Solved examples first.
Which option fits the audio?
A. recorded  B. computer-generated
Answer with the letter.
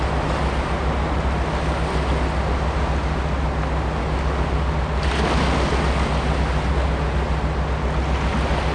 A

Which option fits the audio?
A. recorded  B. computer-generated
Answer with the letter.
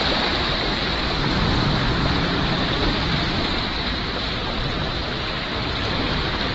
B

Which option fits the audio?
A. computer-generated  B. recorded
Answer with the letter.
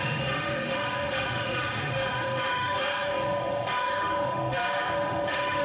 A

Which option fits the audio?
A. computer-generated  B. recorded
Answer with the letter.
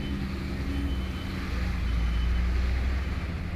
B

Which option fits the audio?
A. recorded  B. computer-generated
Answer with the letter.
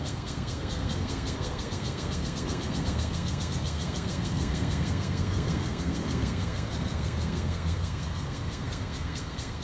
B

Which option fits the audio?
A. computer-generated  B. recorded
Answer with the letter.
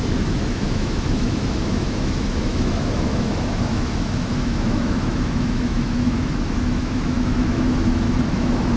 A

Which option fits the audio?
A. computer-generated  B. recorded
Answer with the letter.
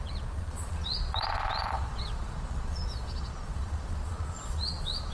A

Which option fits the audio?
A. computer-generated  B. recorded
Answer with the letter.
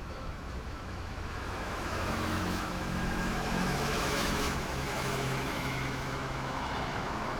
A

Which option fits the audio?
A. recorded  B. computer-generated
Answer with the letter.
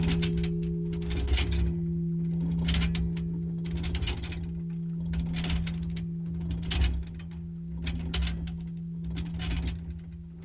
A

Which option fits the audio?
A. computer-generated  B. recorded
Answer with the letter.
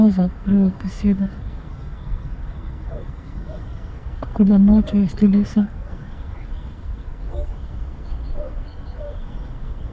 A